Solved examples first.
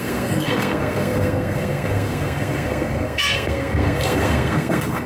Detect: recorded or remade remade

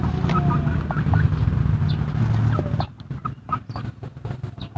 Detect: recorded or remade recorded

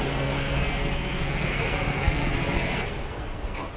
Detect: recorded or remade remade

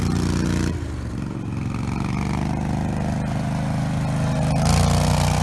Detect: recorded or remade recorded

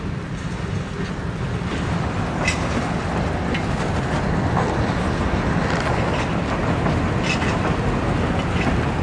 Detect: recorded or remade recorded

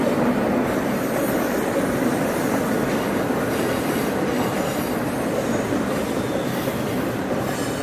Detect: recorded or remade recorded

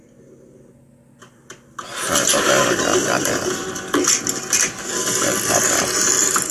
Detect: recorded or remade recorded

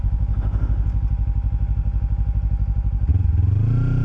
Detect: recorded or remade recorded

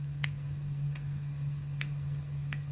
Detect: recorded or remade remade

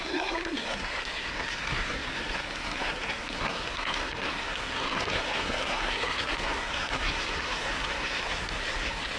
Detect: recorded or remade remade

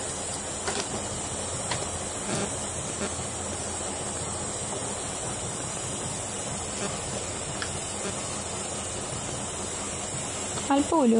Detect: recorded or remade recorded